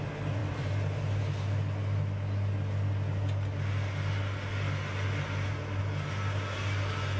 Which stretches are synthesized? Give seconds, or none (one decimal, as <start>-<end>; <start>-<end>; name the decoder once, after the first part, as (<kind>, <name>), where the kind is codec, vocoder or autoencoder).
0.4-1.0 (vocoder, BigVGAN v2)